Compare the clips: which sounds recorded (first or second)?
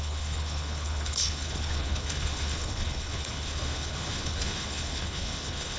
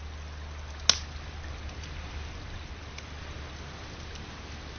second